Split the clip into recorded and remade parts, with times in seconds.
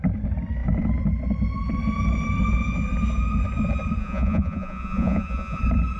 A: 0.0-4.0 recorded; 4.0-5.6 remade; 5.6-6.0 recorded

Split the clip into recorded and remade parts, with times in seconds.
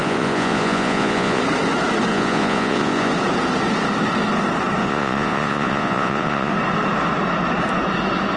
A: 0.0-1.4 remade; 1.4-2.1 recorded; 2.1-3.1 remade; 3.1-4.8 recorded; 4.8-6.5 remade; 6.5-8.4 recorded